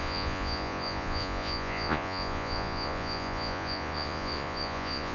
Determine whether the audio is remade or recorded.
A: remade